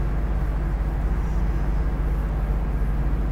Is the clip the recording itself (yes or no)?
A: yes